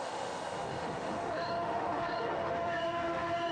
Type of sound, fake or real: fake